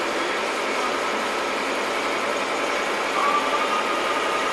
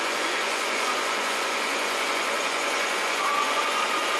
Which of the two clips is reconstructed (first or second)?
second